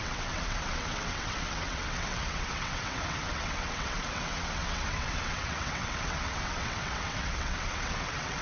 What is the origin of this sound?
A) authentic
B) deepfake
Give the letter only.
B